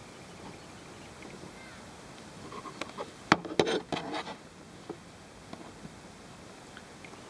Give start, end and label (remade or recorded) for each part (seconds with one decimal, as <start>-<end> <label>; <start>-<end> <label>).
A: 0.0-7.3 recorded